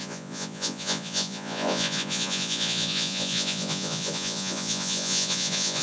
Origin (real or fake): fake